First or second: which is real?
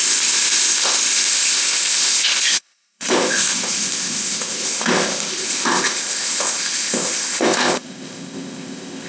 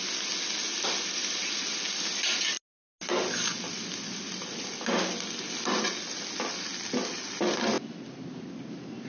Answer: second